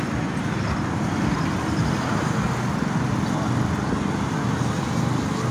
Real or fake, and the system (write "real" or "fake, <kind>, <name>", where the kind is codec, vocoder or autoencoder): real